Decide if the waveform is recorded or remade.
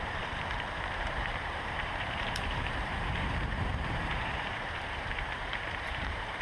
remade